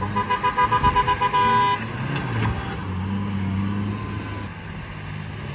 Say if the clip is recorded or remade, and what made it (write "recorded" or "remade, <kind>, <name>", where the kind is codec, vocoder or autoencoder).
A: recorded